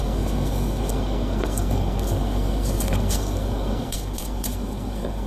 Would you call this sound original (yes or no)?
no